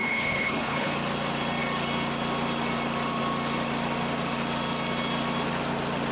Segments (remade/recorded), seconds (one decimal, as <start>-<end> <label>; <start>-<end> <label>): 0.0-0.9 remade; 0.9-6.1 recorded